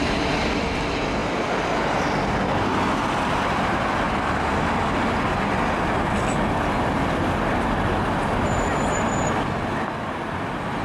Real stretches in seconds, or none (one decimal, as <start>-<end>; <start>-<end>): 0.0-10.8